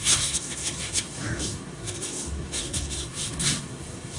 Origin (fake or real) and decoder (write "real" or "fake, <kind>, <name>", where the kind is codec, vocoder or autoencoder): fake, codec, SNAC